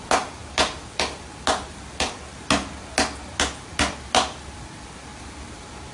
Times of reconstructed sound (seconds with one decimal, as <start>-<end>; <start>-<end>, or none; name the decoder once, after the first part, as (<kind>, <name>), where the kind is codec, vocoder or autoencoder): none